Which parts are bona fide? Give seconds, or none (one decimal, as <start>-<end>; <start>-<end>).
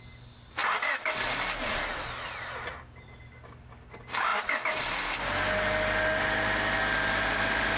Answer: 0.0-7.8